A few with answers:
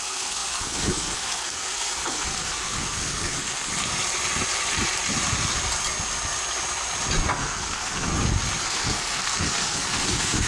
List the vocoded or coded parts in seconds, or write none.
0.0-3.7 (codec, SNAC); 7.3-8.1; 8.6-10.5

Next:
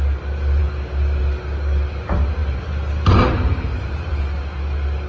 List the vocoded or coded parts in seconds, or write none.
2.4-4.4 (vocoder, BigVGAN v2)